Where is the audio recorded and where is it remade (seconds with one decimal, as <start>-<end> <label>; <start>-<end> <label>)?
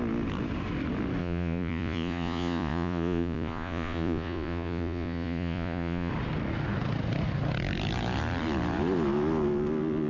0.0-1.2 recorded; 1.2-6.1 remade; 6.1-10.1 recorded